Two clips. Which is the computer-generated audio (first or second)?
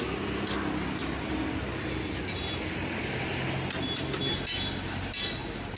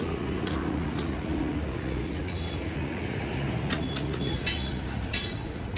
second